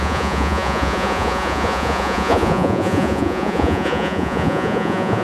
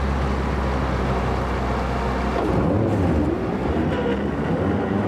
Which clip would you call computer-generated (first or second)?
first